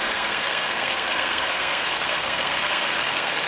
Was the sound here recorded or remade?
remade